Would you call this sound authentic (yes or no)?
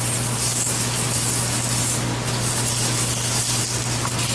yes